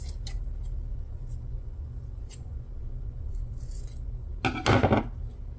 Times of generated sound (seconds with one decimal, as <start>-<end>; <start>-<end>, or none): 0.9-4.3